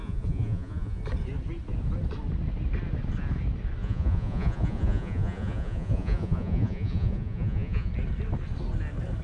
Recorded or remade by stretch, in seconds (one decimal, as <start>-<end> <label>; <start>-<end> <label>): 0.0-1.0 remade; 1.0-3.8 recorded; 3.8-7.9 remade; 7.9-9.2 recorded